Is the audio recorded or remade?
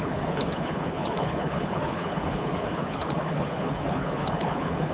remade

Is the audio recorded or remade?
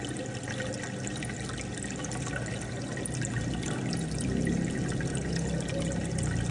recorded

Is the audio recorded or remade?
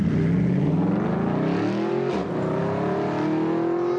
recorded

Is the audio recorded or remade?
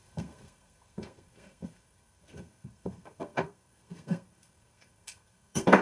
remade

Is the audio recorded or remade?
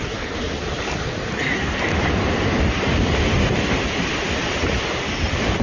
recorded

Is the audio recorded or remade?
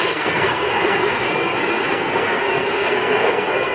remade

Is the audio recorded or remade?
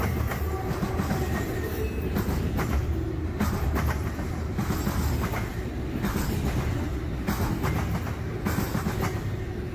recorded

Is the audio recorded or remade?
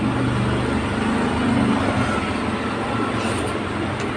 recorded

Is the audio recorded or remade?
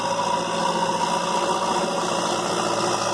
recorded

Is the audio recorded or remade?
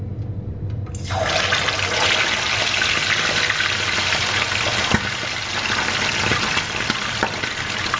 recorded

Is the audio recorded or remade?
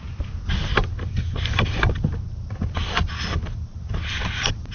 recorded